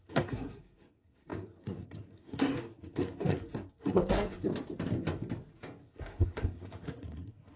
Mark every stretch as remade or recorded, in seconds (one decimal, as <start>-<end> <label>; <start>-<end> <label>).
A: 0.0-4.5 remade; 4.5-5.9 recorded; 5.9-7.6 remade